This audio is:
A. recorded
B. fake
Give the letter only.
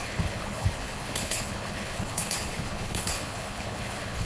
B